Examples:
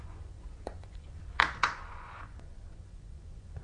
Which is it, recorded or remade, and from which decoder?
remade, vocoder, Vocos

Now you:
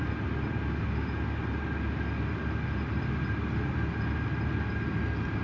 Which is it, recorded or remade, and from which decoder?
recorded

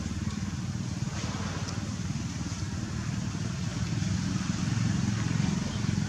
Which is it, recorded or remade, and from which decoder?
recorded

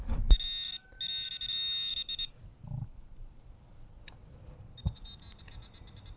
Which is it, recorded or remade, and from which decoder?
recorded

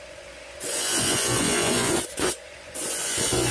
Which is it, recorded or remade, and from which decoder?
remade, vocoder, Vocos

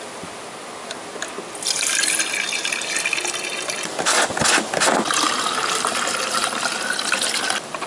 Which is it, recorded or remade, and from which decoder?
recorded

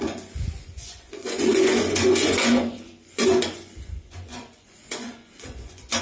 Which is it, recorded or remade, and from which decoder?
remade, vocoder, Vocos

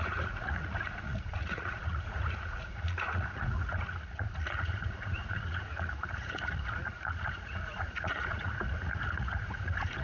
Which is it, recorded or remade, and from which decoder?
remade, vocoder, Vocos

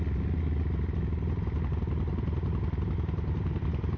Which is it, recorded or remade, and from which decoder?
recorded